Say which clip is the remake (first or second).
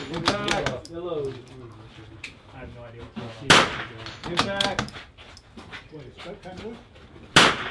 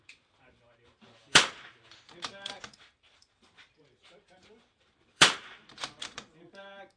second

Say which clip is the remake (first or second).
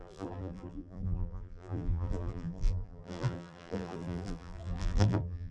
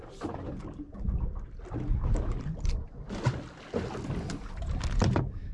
first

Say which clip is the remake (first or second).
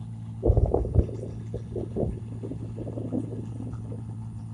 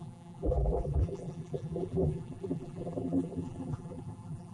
second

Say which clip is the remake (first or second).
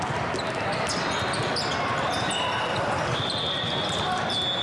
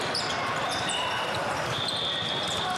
second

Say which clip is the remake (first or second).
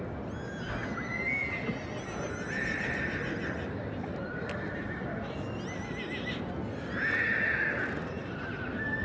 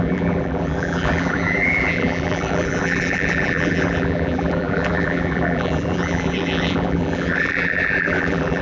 second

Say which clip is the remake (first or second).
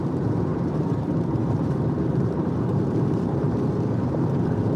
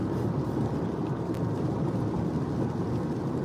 first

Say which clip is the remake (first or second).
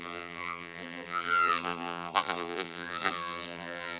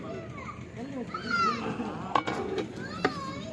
first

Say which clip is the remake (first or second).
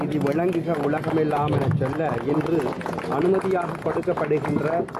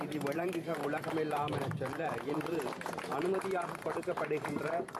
second